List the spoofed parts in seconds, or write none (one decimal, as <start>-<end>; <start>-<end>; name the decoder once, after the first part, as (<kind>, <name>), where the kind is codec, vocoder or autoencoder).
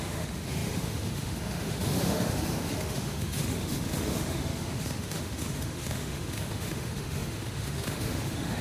0.0-8.6 (autoencoder, DAC-VAE)